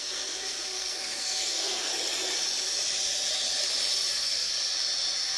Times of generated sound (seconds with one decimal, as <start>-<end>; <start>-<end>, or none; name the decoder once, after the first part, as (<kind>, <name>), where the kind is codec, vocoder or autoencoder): 0.0-1.9 (codec, SNAC); 4.1-4.5